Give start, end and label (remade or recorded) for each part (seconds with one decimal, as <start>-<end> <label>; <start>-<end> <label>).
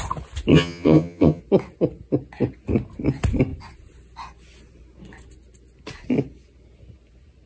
0.0-0.5 recorded; 0.5-1.4 remade; 1.4-7.5 recorded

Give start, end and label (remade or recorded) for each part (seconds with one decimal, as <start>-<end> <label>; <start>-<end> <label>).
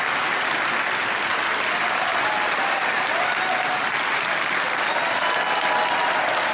0.0-6.5 recorded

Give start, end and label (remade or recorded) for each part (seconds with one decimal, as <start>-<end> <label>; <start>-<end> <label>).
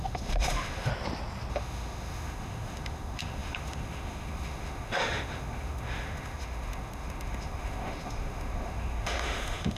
0.0-0.9 remade; 0.9-1.5 recorded; 1.5-9.8 remade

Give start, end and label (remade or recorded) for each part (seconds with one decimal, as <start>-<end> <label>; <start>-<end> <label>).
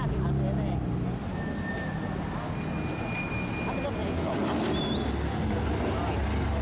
0.0-1.2 recorded; 1.2-1.7 remade; 1.7-6.6 recorded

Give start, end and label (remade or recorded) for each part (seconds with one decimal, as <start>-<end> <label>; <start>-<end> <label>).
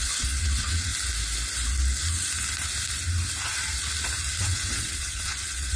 0.0-0.9 remade; 0.9-4.4 recorded; 4.4-5.8 remade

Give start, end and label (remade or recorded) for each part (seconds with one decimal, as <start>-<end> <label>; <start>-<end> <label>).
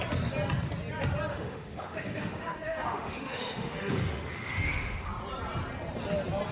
0.0-1.3 recorded; 1.3-5.1 remade; 5.1-6.5 recorded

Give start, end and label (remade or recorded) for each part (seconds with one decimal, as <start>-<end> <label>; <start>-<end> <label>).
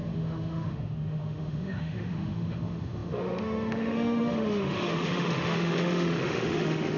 0.0-7.0 remade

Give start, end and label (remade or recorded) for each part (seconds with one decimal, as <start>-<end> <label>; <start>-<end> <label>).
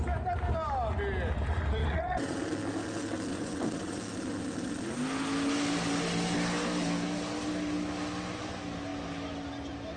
0.0-1.8 recorded; 1.8-2.4 remade; 2.4-3.3 recorded; 3.3-4.0 remade; 4.0-10.0 recorded